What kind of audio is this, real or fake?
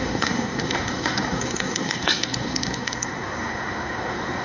fake